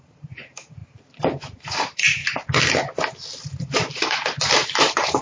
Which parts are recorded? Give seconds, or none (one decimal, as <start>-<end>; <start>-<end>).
0.8-1.7; 2.2-3.4